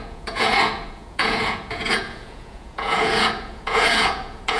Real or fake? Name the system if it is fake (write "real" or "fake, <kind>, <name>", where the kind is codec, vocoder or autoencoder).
fake, vocoder, Vocos